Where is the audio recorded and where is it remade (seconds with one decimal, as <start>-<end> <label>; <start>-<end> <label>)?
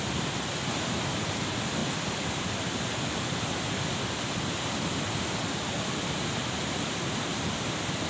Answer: 0.0-8.1 recorded